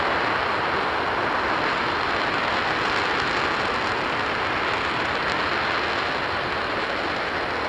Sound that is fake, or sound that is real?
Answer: real